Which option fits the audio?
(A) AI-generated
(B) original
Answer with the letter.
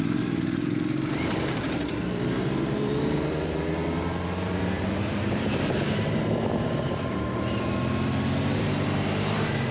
A